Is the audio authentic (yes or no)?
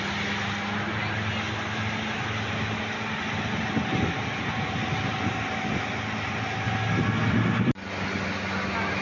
yes